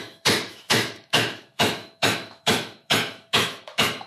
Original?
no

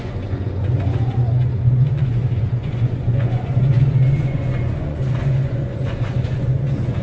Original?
no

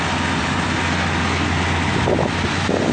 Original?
yes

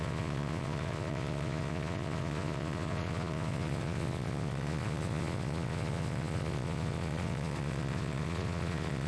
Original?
no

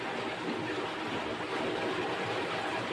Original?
yes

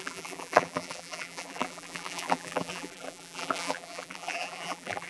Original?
no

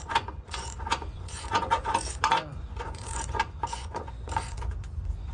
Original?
no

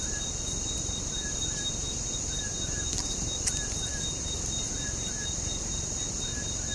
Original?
yes